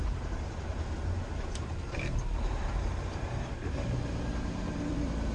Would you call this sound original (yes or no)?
no